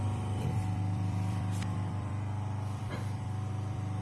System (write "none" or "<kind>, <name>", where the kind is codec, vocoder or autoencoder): vocoder, BigVGAN v2